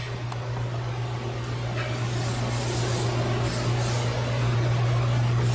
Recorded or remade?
recorded